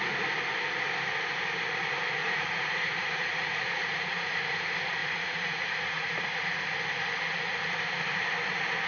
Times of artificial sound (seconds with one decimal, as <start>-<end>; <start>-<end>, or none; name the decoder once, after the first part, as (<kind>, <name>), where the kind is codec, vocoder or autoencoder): 2.2-4.4 (vocoder, Vocos); 5.0-6.6